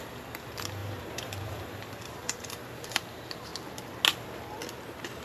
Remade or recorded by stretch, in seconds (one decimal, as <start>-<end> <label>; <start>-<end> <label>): 0.0-3.5 remade; 3.5-4.8 recorded; 4.8-5.2 remade